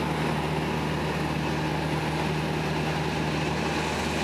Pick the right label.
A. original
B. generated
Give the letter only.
A